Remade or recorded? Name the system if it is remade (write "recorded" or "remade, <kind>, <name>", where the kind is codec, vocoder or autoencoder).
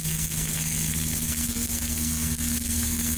remade, codec, SNAC